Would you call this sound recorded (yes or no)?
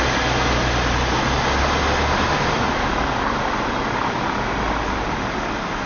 yes